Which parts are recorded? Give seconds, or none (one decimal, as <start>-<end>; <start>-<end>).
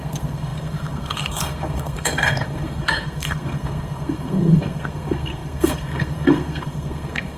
none